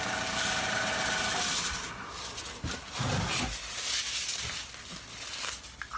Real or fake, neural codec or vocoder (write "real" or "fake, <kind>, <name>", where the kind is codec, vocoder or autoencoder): real